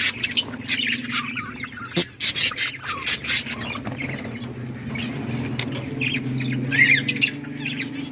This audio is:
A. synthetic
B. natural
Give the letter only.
B